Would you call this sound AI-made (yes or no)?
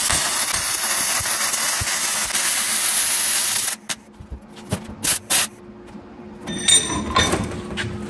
no